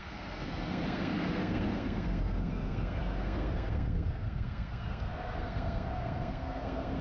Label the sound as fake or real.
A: fake